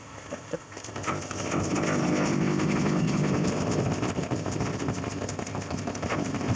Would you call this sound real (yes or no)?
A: no